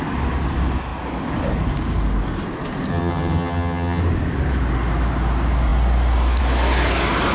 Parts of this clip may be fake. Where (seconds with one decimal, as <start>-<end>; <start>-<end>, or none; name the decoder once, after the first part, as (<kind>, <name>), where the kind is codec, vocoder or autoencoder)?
2.9-4.0 (vocoder, HiFi-GAN)